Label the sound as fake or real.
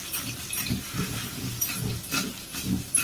fake